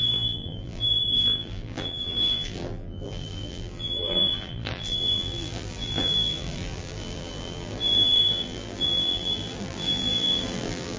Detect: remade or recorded remade